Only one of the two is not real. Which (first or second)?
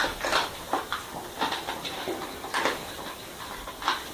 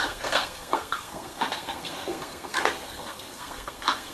second